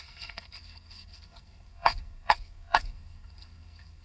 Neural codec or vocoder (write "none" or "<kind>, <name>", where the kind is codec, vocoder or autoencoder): codec, SNAC